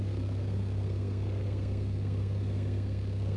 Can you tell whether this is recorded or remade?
remade